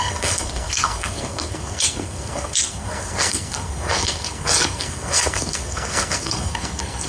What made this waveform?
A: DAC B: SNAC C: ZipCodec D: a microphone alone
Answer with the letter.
B